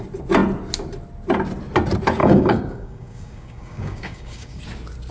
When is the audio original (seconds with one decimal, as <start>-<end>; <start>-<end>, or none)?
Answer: 0.0-2.2; 4.6-5.1